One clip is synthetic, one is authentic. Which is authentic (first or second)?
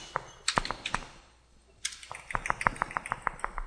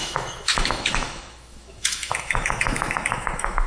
first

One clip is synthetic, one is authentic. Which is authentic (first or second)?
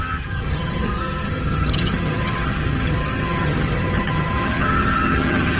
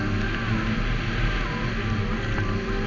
second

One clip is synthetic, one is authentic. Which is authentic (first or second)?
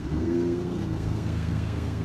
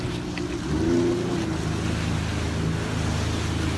second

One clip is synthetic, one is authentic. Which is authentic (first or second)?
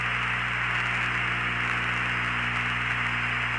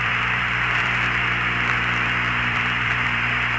first